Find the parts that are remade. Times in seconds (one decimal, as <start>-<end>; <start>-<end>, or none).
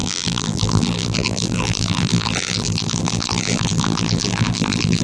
0.0-5.0